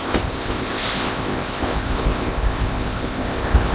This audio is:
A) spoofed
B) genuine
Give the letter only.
A